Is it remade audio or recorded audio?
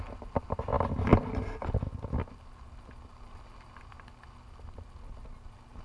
recorded